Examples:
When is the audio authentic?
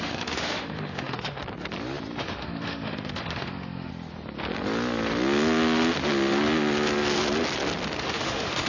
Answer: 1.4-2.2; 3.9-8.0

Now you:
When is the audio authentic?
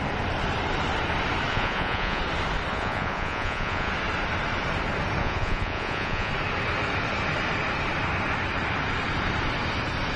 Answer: 0.0-1.5; 2.2-2.7; 3.9-5.2; 6.3-10.2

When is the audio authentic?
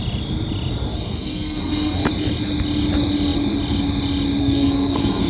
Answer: 0.0-0.9; 2.1-4.4